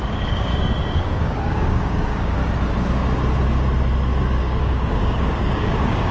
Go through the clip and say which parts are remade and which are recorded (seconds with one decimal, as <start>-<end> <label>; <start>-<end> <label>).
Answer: 0.0-0.5 remade; 0.5-1.0 recorded; 1.0-2.4 remade; 2.4-4.4 recorded; 4.4-6.1 remade